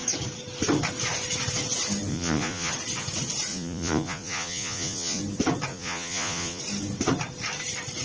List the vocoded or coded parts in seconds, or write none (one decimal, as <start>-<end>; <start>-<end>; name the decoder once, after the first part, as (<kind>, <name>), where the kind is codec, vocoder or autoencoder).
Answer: 2.1-2.7 (vocoder, Vocos); 3.5-5.2; 5.7-6.6